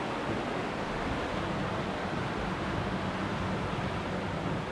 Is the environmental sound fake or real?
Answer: real